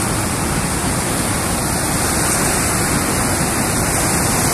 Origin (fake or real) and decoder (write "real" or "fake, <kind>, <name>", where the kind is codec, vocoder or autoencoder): real